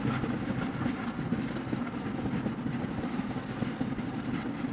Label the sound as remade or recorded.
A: recorded